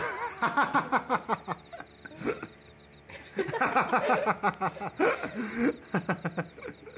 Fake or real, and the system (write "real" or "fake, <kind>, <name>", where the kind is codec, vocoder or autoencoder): real